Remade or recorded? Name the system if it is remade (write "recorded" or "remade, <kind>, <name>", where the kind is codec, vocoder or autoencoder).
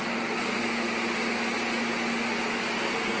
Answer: recorded